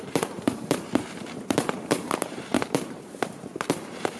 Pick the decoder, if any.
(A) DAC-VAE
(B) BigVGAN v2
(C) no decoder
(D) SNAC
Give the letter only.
B